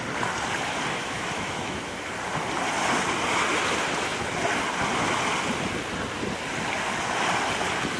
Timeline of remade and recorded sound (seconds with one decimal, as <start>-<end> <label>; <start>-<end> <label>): 0.0-1.0 recorded; 1.0-2.1 remade; 2.1-8.0 recorded